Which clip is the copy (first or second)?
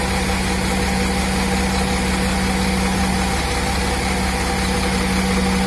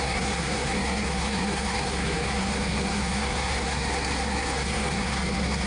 second